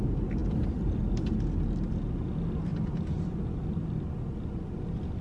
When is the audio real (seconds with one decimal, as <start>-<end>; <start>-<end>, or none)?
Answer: 0.0-5.2